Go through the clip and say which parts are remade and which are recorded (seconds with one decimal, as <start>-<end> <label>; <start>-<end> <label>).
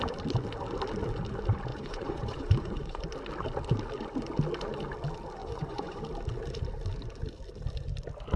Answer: 0.0-1.7 recorded; 1.7-3.0 remade; 3.0-5.4 recorded; 5.4-6.0 remade; 6.0-8.4 recorded